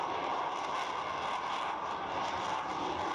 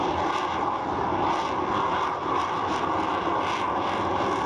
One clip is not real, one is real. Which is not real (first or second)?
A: first